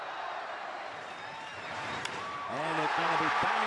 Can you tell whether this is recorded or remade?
remade